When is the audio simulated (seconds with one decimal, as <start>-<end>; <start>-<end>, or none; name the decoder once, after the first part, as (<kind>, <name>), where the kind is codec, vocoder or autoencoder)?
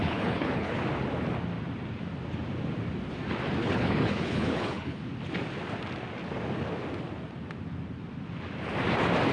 0.0-0.8 (codec, HILCodec); 3.6-5.0